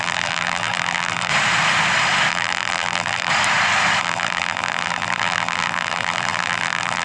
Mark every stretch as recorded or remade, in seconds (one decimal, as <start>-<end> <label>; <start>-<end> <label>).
0.0-1.3 remade; 1.3-2.3 recorded; 2.3-3.3 remade; 3.3-4.0 recorded; 4.0-7.0 remade